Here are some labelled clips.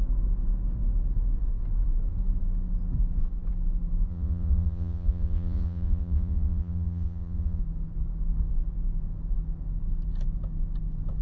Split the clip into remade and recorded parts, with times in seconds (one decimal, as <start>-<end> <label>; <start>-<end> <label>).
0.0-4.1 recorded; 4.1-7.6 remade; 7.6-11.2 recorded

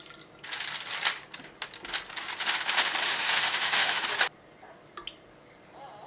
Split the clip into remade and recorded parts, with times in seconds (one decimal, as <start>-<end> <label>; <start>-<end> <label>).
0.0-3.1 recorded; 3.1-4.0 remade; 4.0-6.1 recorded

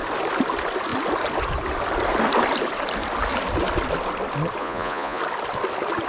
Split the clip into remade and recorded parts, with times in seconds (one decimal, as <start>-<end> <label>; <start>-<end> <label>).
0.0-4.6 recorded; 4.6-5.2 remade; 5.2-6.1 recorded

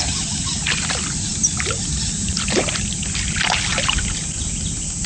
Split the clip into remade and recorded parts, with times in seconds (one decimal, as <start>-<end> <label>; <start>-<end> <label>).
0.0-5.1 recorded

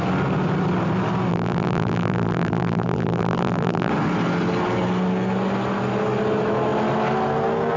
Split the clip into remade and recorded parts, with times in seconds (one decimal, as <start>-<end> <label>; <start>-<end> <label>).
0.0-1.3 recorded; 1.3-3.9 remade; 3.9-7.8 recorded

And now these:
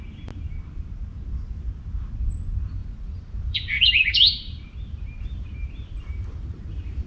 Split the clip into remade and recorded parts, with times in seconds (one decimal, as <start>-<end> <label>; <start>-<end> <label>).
0.0-2.8 recorded; 2.8-7.1 remade

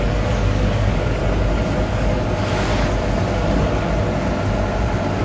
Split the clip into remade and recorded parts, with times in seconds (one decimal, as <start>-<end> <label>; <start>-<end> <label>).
0.0-1.2 remade; 1.2-1.9 recorded; 1.9-2.7 remade; 2.7-5.2 recorded